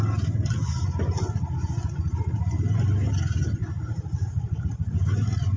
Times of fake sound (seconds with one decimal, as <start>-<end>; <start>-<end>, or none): 3.6-4.6